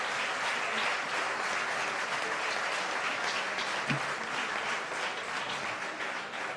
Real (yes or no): yes